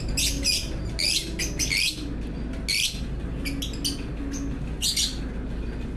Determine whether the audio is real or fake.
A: real